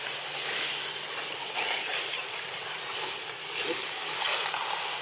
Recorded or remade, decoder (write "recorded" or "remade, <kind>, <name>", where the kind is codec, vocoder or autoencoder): recorded